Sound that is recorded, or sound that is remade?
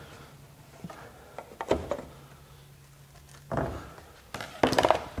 recorded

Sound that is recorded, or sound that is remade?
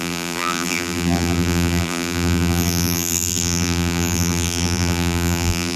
remade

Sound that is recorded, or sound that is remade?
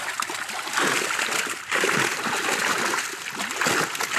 recorded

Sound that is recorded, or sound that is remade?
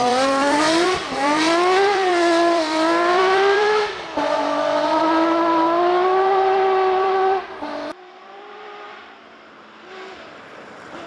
remade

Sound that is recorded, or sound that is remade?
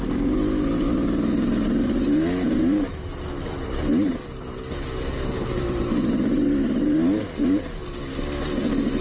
recorded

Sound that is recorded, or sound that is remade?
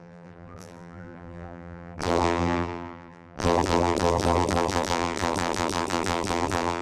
remade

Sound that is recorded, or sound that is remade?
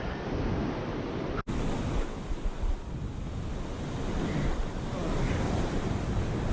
recorded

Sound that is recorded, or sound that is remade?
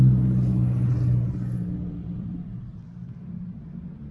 recorded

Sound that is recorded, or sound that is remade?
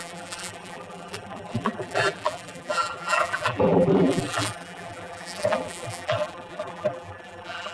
remade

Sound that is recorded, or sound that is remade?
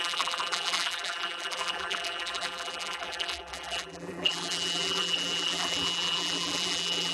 remade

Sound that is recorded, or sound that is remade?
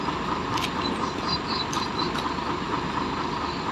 recorded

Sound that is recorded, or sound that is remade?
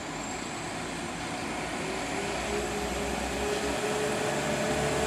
recorded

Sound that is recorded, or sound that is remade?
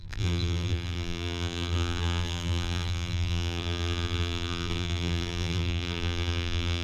remade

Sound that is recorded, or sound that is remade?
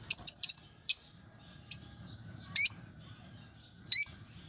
remade